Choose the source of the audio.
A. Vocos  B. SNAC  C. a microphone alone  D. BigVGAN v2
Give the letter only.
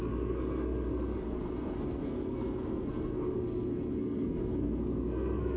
B